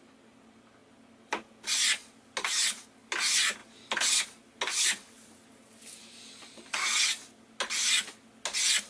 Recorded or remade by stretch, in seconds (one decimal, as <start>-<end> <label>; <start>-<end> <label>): 0.0-8.9 recorded